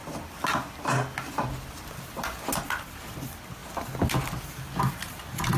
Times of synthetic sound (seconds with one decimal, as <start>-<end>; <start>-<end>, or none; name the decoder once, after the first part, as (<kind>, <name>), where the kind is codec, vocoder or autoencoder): none

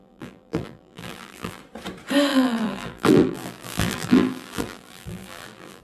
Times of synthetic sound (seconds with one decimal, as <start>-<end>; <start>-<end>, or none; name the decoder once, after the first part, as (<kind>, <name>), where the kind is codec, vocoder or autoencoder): 0.0-1.6 (vocoder, BigVGAN v2); 2.3-5.8